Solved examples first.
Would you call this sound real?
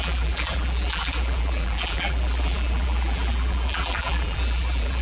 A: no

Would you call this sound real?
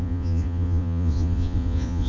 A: no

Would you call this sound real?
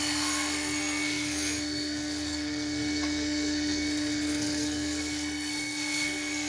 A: no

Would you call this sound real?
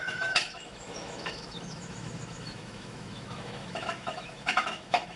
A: no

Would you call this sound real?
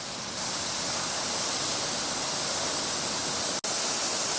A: yes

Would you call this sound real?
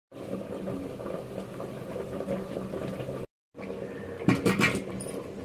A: no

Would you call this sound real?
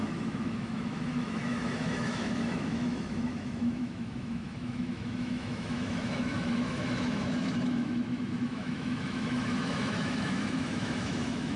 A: no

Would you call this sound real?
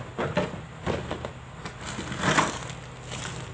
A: yes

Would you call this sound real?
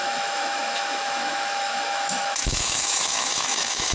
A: no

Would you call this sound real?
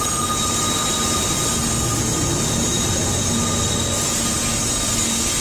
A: yes